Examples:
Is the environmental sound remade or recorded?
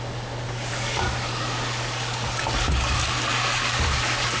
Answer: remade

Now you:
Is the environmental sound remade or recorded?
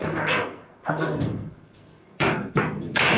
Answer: remade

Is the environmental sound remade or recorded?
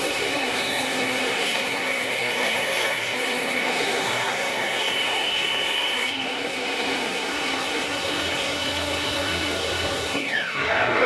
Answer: remade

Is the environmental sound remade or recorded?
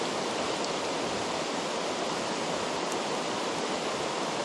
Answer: recorded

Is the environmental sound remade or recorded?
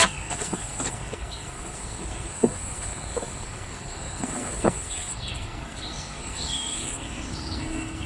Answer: remade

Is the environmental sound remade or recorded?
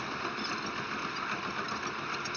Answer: recorded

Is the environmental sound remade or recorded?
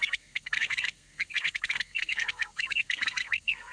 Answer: remade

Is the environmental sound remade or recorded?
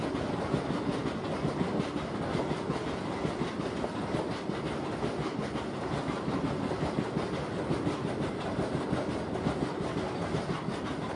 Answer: recorded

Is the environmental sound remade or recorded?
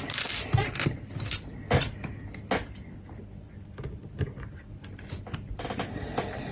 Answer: recorded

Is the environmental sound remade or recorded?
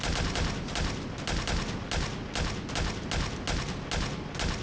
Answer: recorded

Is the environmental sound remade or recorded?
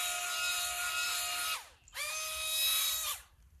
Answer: recorded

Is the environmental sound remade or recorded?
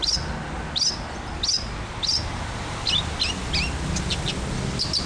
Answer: recorded